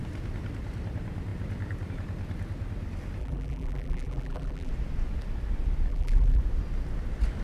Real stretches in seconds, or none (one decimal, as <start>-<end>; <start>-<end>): 0.0-3.2; 4.7-5.9; 6.4-7.4